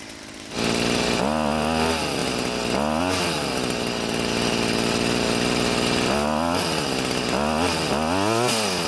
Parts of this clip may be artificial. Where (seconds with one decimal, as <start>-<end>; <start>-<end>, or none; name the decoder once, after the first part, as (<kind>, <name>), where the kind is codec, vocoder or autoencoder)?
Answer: none